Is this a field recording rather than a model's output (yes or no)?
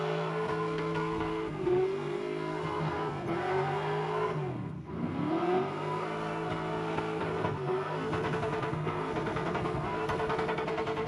no